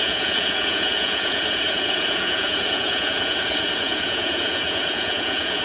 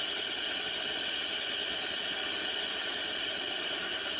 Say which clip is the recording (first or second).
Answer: second